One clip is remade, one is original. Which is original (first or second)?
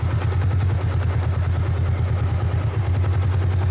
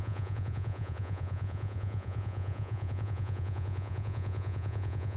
first